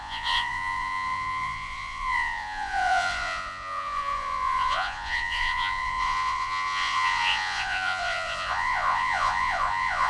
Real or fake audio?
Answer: fake